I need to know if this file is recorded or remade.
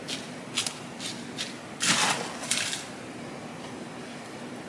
recorded